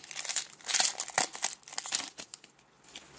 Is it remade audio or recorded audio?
recorded